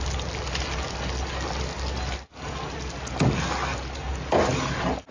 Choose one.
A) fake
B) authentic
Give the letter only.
B